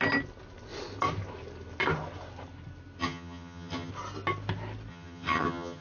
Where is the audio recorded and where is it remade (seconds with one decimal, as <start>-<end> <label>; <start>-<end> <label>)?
0.0-3.0 recorded; 3.0-3.9 remade; 3.9-4.9 recorded; 4.9-5.8 remade